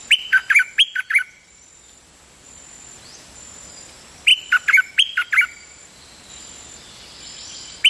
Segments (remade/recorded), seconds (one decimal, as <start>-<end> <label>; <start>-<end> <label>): 0.0-7.9 recorded